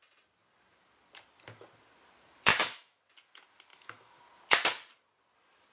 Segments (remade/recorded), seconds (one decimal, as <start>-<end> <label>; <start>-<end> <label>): 0.0-2.5 recorded; 2.5-3.0 remade; 3.0-3.7 recorded; 3.7-4.2 remade; 4.2-5.7 recorded